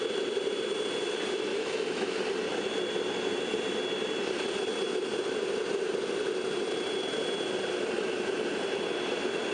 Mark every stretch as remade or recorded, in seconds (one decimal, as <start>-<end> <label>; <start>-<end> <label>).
0.0-1.5 recorded; 1.5-2.1 remade; 2.1-9.5 recorded